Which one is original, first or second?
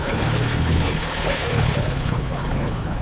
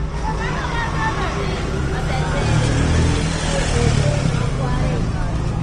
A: second